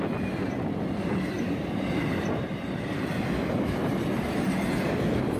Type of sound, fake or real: real